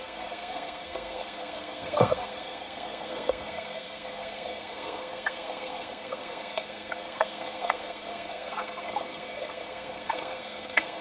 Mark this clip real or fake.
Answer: fake